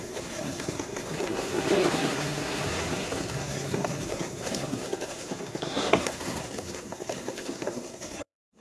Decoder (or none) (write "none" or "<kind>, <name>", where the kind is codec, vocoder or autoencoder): codec, SNAC